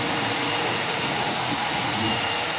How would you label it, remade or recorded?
remade